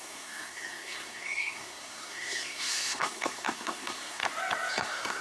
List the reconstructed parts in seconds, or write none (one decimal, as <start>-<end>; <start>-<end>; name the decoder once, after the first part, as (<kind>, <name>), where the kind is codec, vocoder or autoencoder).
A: 0.0-4.2 (codec, SNAC); 4.7-5.2